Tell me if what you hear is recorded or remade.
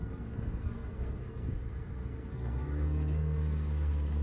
remade